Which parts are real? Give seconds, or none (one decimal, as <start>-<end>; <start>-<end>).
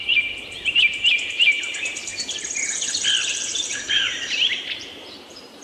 2.1-3.3